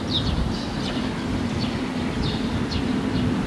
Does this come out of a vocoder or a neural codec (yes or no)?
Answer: no